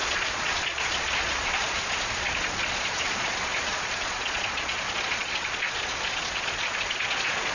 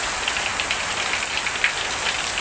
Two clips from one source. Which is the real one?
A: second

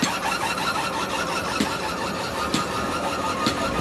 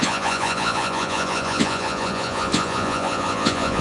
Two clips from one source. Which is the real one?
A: first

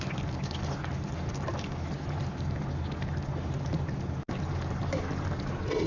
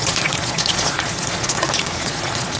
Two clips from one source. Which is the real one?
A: first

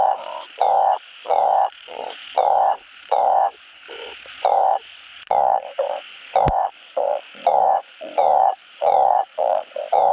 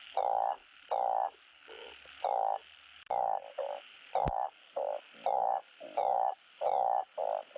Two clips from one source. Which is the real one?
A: second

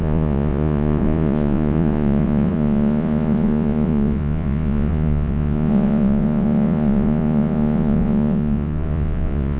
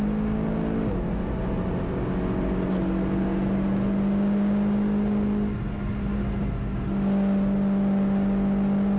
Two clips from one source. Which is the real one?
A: second